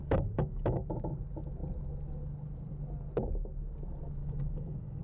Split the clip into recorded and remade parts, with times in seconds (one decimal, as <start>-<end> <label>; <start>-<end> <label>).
0.0-0.9 remade; 0.9-4.2 recorded; 4.2-5.0 remade

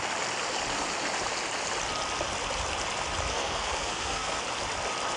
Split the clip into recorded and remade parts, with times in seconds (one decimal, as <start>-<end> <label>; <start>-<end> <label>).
0.0-3.3 recorded; 3.3-4.4 remade; 4.4-5.2 recorded

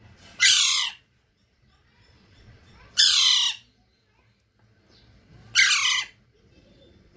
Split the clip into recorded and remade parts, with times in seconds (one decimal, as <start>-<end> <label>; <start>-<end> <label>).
0.0-3.3 remade; 3.3-6.2 recorded; 6.2-7.2 remade

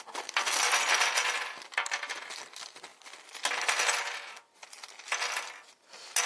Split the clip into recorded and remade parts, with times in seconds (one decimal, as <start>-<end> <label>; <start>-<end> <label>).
0.0-2.9 recorded; 2.9-3.7 remade; 3.7-6.3 recorded

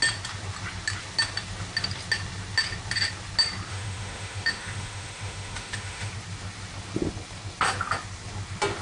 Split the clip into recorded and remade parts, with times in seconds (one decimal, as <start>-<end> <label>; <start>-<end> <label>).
0.0-3.7 recorded; 3.7-6.1 remade; 6.1-8.8 recorded